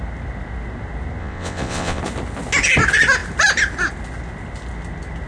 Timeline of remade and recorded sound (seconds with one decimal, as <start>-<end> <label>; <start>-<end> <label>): 0.0-1.2 recorded; 1.2-2.0 remade; 2.0-5.3 recorded